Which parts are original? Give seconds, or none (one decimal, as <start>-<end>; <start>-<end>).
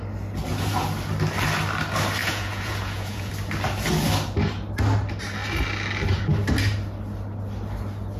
0.0-2.2; 3.3-8.2